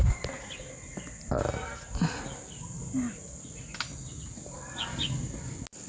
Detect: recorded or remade recorded